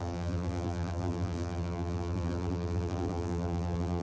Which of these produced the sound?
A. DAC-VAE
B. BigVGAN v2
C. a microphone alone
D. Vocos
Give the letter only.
B